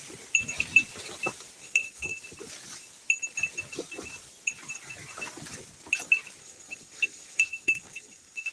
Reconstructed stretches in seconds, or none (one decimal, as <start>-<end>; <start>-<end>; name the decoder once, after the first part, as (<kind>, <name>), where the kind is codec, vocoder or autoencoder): 1.6-2.2 (codec, SNAC); 6.4-8.5